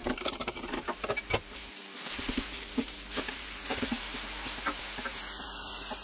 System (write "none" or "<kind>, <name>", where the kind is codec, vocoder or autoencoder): vocoder, BigVGAN v2